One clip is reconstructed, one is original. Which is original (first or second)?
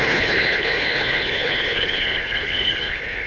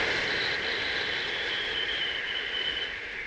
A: second